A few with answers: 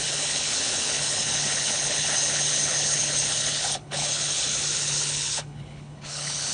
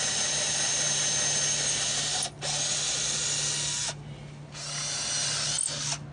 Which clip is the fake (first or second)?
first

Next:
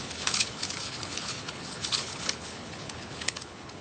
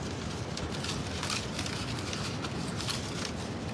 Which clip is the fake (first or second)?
first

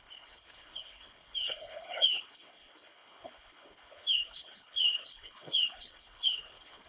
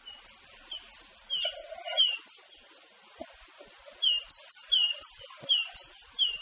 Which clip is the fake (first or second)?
first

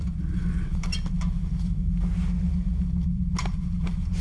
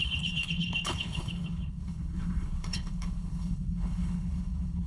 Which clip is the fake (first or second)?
second